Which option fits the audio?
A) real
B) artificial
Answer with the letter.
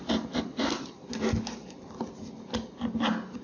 A